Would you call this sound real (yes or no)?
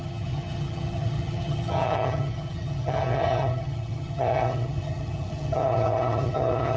no